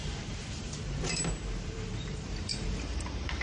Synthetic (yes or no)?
yes